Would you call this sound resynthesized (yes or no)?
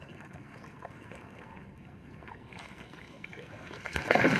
yes